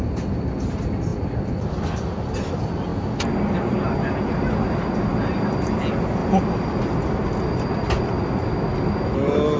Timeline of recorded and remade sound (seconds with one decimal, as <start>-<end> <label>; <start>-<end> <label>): 0.0-9.6 recorded